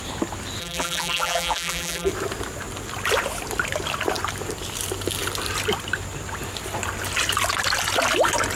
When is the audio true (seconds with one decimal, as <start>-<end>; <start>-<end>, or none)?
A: 0.0-0.6; 2.1-8.6